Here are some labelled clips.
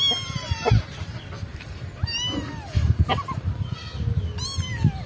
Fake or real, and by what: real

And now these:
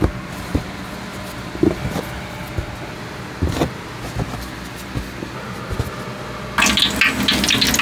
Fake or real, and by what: real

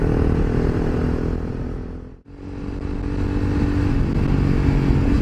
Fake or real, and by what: real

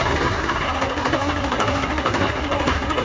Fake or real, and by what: fake, codec, SNAC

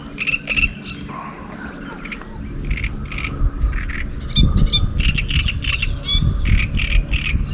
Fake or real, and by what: real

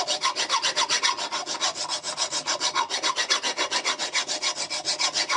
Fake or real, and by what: real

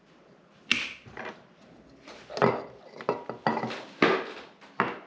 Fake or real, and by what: real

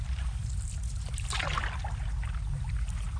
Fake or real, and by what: real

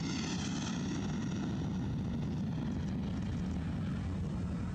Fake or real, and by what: real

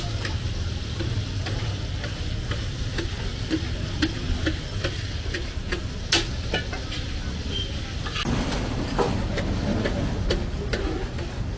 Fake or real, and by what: real